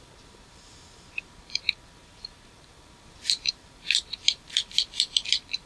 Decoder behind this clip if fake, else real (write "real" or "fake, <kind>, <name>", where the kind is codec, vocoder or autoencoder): fake, vocoder, BigVGAN v2